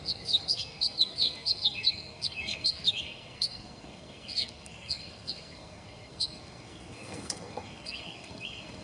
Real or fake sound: fake